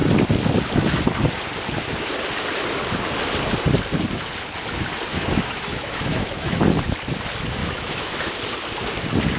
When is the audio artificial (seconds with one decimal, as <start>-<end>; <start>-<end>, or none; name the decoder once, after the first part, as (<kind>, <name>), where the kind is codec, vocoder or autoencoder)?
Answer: 5.1-6.6 (autoencoder, DAC-VAE); 7.6-8.2

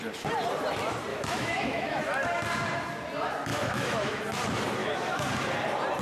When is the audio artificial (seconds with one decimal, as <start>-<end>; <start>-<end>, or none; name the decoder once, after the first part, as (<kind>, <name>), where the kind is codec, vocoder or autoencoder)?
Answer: 1.1-2.0 (autoencoder, DAC-VAE); 3.5-4.2; 4.8-5.3

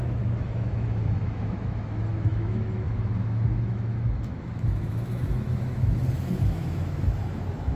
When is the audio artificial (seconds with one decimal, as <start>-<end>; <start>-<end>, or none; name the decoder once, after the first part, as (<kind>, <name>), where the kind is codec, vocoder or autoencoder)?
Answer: 0.0-7.8 (autoencoder, DAC-VAE)

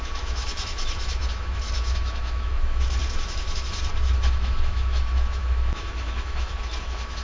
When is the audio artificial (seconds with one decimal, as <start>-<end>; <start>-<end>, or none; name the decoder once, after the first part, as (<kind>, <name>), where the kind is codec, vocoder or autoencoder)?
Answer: 0.0-7.2 (autoencoder, DAC-VAE)

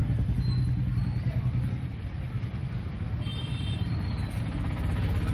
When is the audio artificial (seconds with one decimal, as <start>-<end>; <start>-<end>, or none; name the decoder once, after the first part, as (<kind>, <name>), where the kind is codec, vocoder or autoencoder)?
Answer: none